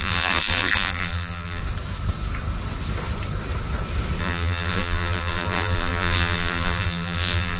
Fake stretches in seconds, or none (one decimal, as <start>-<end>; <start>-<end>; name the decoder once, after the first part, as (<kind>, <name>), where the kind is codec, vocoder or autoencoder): 0.0-1.6 (vocoder, BigVGAN v2); 4.2-7.6